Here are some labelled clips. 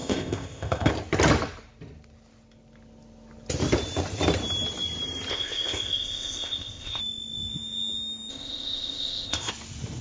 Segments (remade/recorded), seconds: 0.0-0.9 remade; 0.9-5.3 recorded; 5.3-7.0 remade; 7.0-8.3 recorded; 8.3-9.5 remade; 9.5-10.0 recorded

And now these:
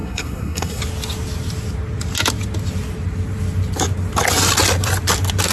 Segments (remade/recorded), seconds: 0.0-0.8 remade; 0.8-5.5 recorded

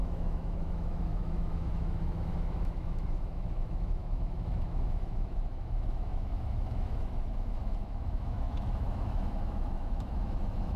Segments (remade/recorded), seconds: 0.0-10.8 remade

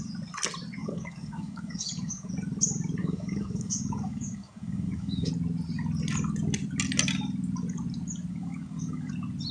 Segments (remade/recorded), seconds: 0.0-0.8 recorded; 0.8-2.3 remade; 2.3-3.0 recorded; 3.0-5.3 remade; 5.3-8.3 recorded; 8.3-9.1 remade; 9.1-9.5 recorded

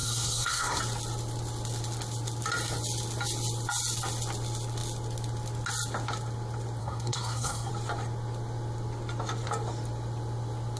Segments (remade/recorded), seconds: 0.0-0.8 remade; 0.8-6.8 recorded; 6.8-7.7 remade; 7.7-10.8 recorded

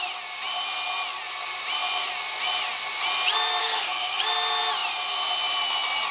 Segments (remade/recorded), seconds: 0.0-3.6 recorded; 3.6-4.2 remade; 4.2-6.1 recorded

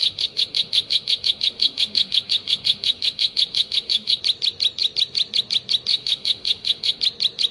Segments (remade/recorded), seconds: 0.0-4.2 remade; 4.2-5.9 recorded; 5.9-7.0 remade; 7.0-7.5 recorded